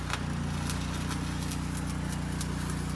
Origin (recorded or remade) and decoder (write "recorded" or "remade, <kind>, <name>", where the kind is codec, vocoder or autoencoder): recorded